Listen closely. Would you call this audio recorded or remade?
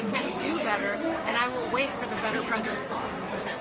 remade